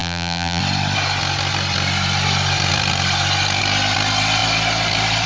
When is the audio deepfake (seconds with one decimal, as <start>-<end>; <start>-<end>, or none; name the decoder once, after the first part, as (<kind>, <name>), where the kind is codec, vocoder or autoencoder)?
0.0-0.6 (vocoder, BigVGAN v2)